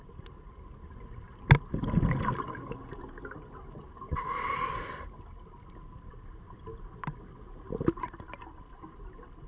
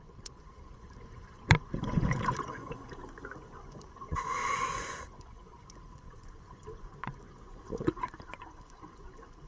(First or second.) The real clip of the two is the first